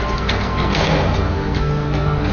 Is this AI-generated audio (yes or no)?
yes